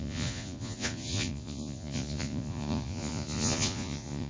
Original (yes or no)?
no